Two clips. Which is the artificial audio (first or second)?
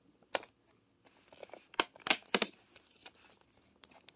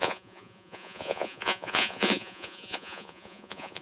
second